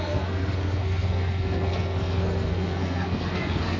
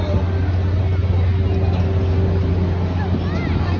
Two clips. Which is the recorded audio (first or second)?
second